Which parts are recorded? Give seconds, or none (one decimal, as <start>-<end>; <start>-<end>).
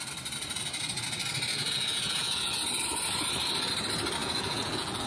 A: 0.0-1.5; 2.6-4.2